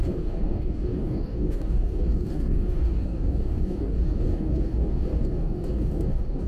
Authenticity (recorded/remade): remade